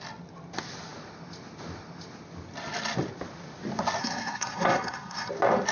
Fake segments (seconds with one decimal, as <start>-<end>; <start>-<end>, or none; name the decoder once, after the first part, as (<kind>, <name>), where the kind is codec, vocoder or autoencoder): 4.0-5.3 (codec, SNAC)